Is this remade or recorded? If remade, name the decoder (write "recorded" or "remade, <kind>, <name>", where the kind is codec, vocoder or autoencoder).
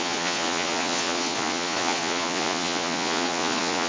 remade, vocoder, Vocos